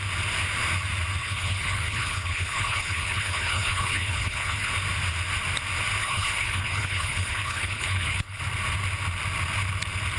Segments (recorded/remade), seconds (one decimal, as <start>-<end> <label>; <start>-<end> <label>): 0.0-1.2 recorded; 1.2-4.7 remade; 4.7-6.0 recorded; 6.0-8.4 remade; 8.4-10.2 recorded